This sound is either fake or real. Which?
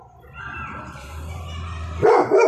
real